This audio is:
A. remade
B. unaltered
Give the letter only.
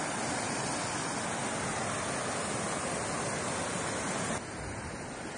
B